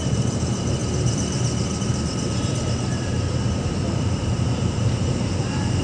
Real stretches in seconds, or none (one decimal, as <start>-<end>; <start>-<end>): none